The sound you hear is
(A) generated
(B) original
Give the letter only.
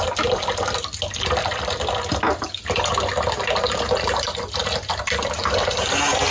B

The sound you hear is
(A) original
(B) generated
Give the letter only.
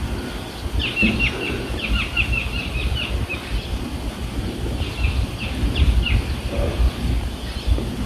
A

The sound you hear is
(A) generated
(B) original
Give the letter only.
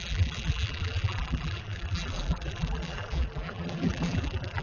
A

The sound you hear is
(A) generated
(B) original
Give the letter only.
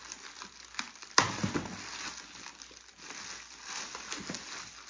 B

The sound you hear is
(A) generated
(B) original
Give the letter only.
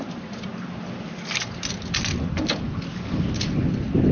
B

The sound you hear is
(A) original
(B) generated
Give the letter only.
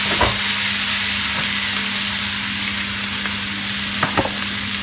A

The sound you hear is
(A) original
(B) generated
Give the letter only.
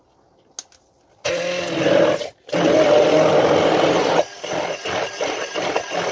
A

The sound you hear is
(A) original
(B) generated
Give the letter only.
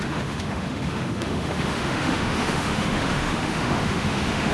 B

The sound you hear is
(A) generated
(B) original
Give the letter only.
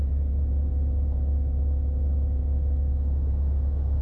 B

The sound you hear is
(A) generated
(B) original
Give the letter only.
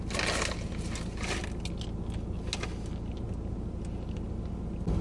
B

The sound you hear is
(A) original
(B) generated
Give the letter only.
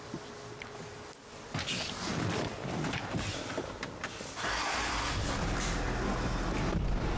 A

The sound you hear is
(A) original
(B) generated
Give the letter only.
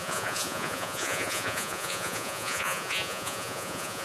B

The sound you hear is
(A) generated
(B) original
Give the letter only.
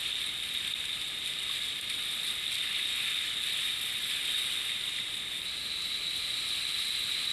B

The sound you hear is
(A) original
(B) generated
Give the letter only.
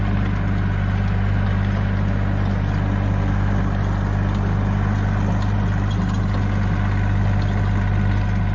A